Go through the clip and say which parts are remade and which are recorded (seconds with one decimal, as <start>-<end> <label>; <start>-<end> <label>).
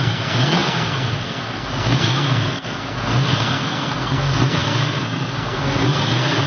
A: 0.0-6.5 remade